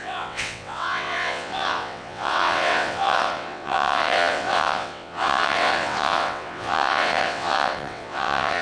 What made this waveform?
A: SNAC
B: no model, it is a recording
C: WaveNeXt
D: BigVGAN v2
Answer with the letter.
C